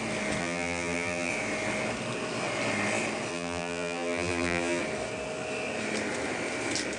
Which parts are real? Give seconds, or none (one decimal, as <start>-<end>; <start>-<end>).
0.0-0.4; 1.3-3.3; 4.8-7.0